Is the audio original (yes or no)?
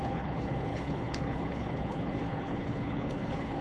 no